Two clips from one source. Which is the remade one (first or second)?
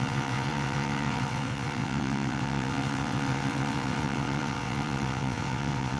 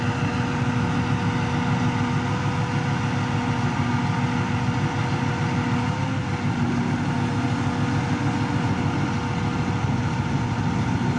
first